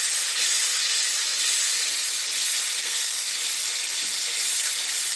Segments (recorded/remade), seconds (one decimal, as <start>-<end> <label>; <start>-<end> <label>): 0.0-2.8 recorded; 2.8-3.4 remade; 3.4-5.2 recorded